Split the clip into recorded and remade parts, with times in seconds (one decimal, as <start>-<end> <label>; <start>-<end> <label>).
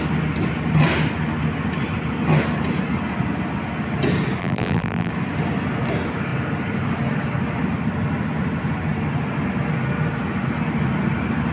0.0-4.4 recorded; 4.4-5.1 remade; 5.1-11.5 recorded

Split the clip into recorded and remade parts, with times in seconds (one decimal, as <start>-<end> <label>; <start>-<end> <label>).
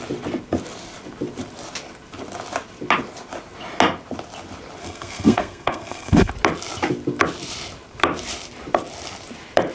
0.0-4.8 recorded; 4.8-6.3 remade; 6.3-9.7 recorded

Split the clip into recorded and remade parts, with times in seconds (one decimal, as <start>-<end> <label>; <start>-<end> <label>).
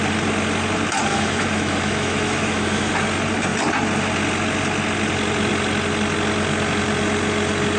0.0-1.1 recorded; 1.1-2.9 remade; 2.9-7.8 recorded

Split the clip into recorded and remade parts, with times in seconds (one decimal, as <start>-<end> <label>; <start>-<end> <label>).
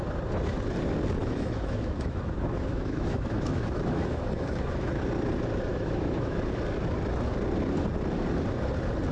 0.0-1.2 recorded; 1.2-5.0 remade; 5.0-5.7 recorded; 5.7-6.4 remade; 6.4-9.1 recorded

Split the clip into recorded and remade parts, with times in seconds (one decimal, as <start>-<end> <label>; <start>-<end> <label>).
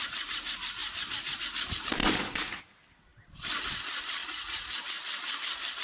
0.0-2.0 recorded; 2.0-2.6 remade; 2.6-4.2 recorded; 4.2-4.8 remade; 4.8-5.8 recorded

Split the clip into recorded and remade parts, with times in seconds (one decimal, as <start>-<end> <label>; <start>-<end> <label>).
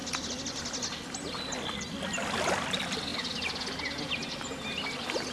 0.0-5.3 recorded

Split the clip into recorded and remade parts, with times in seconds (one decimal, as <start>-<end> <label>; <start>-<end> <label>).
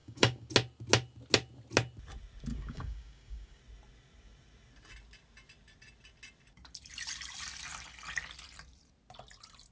0.0-0.5 remade; 0.5-2.5 recorded; 2.5-3.6 remade; 3.6-9.7 recorded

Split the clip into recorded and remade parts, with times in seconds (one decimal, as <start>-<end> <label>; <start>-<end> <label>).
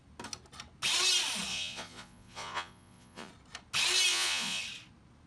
0.0-1.5 recorded; 1.5-3.3 remade; 3.3-4.1 recorded; 4.1-4.6 remade; 4.6-5.3 recorded